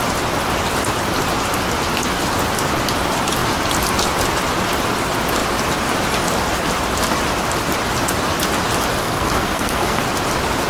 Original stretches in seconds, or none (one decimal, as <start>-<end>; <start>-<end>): 0.0-9.0; 10.0-10.7